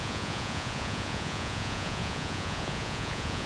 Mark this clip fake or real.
fake